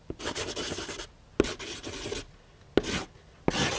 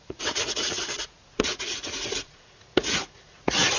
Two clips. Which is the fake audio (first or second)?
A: second